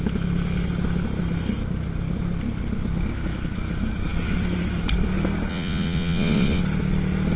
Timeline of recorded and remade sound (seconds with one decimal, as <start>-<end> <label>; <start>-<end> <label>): 0.0-5.5 recorded; 5.5-6.6 remade; 6.6-7.4 recorded